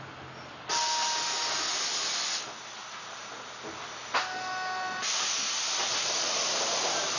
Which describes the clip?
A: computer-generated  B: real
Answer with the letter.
B